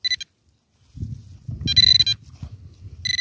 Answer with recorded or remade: recorded